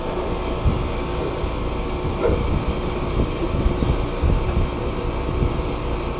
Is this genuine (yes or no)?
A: no